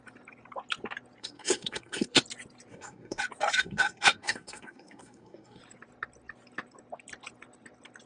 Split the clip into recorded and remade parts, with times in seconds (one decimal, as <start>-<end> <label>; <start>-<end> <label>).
0.0-1.2 recorded; 1.2-2.2 remade; 2.2-2.7 recorded; 2.7-3.2 remade; 3.2-3.6 recorded; 3.6-5.6 remade; 5.6-8.1 recorded